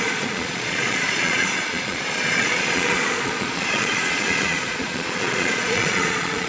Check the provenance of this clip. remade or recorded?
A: remade